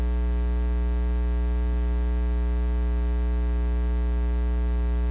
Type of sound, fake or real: real